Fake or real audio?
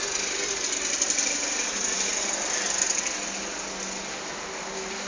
real